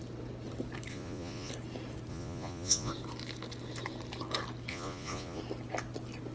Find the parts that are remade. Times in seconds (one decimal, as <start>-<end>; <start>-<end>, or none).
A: 0.9-1.5; 2.1-2.9; 4.7-5.4